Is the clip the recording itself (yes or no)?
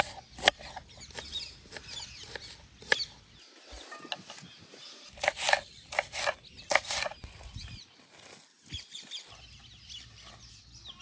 yes